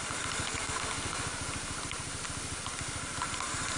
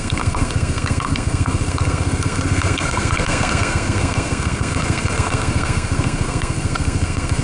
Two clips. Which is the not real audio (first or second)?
second